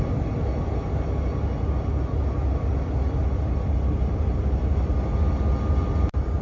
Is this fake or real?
real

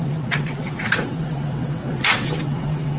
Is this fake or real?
fake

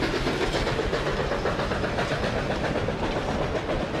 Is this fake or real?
real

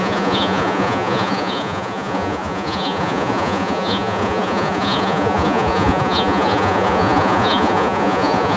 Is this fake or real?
fake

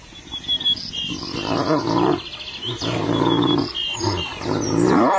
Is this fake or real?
real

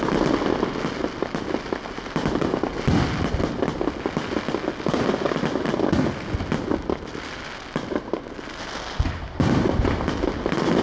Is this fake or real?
real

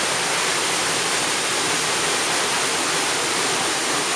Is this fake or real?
real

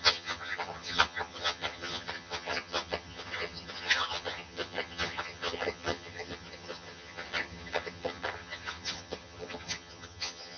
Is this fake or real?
fake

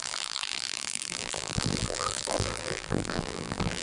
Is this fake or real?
fake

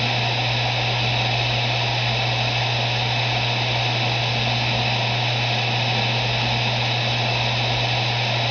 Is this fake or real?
real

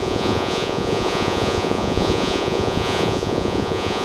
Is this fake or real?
fake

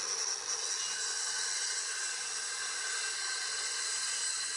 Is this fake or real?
real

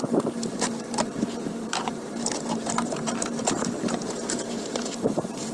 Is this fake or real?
fake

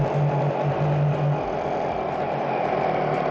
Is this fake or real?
real